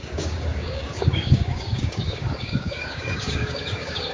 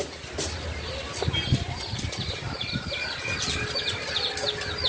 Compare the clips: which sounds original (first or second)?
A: second